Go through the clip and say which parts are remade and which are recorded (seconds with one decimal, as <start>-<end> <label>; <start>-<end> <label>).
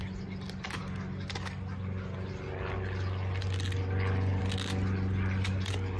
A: 0.0-6.0 recorded